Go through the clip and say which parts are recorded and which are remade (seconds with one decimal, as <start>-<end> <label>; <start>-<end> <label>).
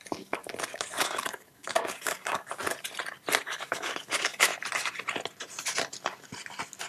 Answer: 0.0-2.6 remade; 2.6-3.4 recorded; 3.4-4.5 remade; 4.5-6.9 recorded